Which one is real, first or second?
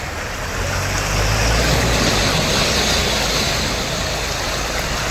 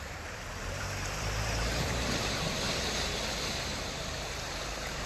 first